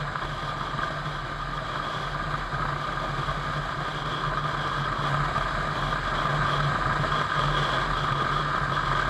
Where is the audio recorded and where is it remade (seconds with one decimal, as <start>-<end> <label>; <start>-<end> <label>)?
0.0-9.1 recorded